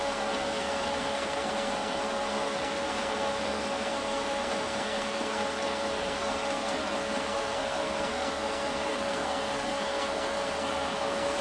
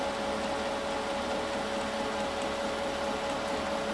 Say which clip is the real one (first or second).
second